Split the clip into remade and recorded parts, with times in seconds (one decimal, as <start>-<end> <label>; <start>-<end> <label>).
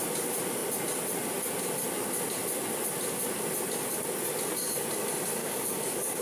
0.0-5.4 recorded; 5.4-6.2 remade